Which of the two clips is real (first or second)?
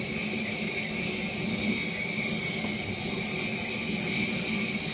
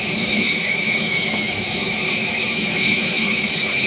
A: first